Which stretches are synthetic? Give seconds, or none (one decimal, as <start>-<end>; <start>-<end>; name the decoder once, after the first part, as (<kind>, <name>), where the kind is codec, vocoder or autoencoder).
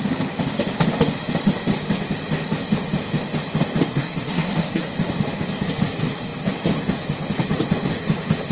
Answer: 3.9-4.9 (codec, SNAC)